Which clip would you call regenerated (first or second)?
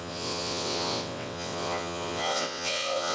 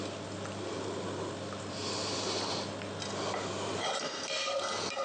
first